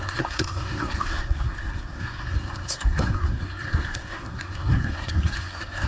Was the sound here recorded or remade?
remade